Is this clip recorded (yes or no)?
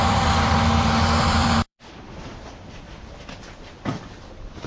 no